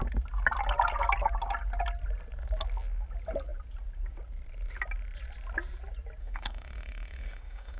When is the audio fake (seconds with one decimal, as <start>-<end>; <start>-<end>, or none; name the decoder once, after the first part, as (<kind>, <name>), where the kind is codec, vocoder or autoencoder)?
6.2-7.8 (autoencoder, DAC-VAE)